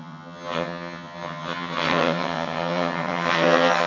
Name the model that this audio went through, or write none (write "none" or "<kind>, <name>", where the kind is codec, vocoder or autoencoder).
vocoder, HiFi-GAN